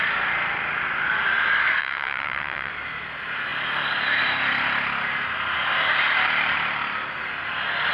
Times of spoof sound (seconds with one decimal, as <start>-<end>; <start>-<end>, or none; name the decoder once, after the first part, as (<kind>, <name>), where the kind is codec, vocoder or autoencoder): 1.8-2.7 (vocoder, WaveNeXt)